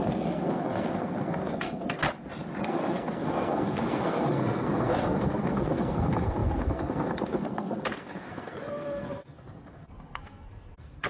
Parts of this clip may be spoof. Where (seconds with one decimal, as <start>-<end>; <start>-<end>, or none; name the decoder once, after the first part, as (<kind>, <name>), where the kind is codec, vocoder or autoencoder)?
0.0-2.0 (codec, SNAC); 2.6-11.1